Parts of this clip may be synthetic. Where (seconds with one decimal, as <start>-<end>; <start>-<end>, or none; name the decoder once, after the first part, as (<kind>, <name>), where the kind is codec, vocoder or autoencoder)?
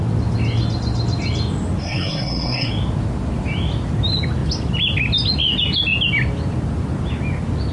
1.8-2.7 (codec, SNAC)